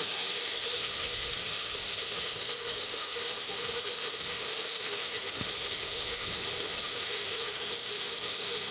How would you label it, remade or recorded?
remade